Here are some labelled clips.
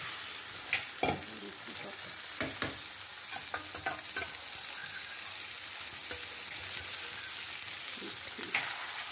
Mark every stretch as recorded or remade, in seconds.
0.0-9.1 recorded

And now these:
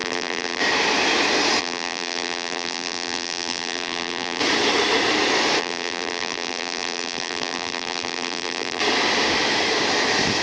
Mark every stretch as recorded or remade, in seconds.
0.0-0.6 remade; 0.6-1.6 recorded; 1.6-4.4 remade; 4.4-5.6 recorded; 5.6-8.8 remade; 8.8-10.4 recorded

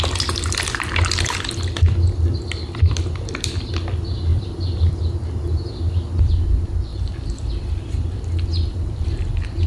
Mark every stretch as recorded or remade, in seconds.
0.0-4.3 recorded; 4.3-5.0 remade; 5.0-6.9 recorded; 6.9-7.9 remade; 7.9-9.7 recorded

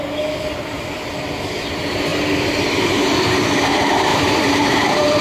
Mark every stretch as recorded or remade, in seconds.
0.0-2.1 recorded; 2.1-3.0 remade; 3.0-4.1 recorded; 4.1-5.2 remade

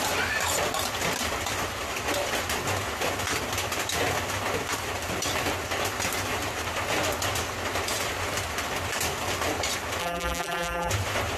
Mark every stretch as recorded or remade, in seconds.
0.0-10.0 recorded; 10.0-10.9 remade; 10.9-11.4 recorded

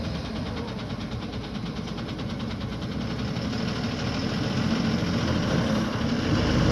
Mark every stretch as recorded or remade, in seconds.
0.0-2.7 remade; 2.7-3.6 recorded; 3.6-5.0 remade; 5.0-6.2 recorded; 6.2-6.7 remade